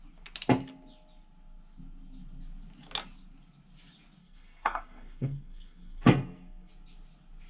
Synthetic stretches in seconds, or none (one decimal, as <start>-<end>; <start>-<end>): 4.2-6.7